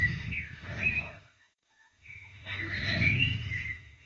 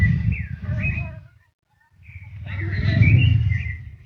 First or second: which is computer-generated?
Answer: first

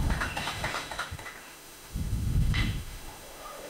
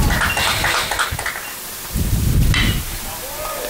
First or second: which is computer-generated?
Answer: first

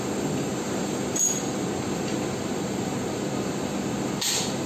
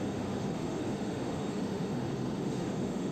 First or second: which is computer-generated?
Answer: second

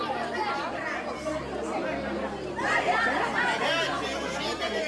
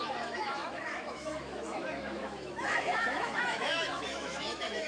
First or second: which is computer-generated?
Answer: second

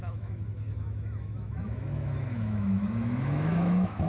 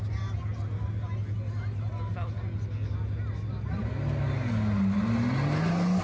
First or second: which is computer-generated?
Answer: first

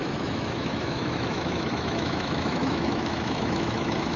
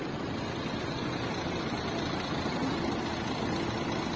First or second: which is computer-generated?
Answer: first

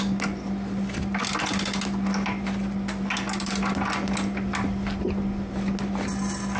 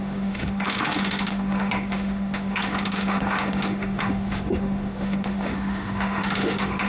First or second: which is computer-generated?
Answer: second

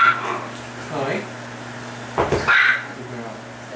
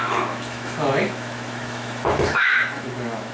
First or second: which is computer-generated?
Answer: second